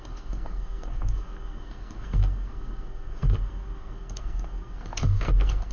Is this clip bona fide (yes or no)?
no